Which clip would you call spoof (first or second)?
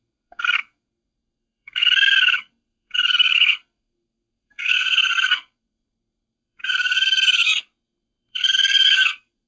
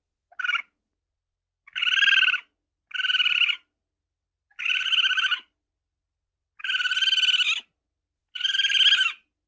first